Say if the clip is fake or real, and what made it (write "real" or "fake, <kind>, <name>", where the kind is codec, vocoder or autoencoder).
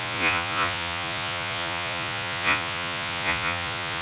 fake, vocoder, Vocos